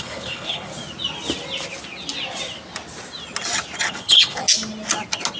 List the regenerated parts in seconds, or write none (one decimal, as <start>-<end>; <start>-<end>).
0.0-0.7; 3.9-4.4